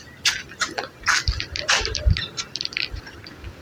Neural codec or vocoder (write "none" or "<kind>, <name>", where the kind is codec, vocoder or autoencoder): none